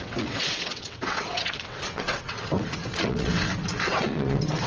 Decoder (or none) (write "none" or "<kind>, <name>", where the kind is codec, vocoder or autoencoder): vocoder, WaveNeXt